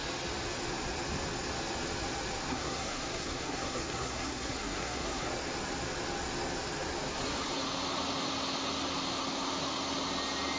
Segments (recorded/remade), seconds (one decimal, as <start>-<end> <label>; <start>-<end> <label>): 0.0-2.5 recorded; 2.5-5.3 remade; 5.3-10.6 recorded